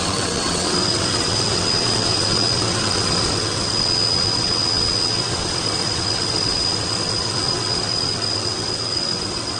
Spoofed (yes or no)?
yes